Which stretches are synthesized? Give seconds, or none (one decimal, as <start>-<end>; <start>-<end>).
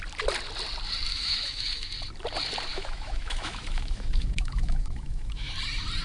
1.1-1.9; 2.7-5.5